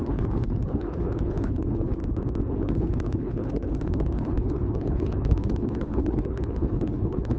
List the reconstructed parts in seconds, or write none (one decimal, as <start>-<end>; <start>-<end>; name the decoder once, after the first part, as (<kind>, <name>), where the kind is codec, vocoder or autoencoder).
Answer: 0.0-2.0 (codec, HILCodec); 2.5-7.4